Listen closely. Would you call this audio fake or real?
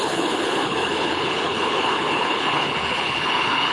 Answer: fake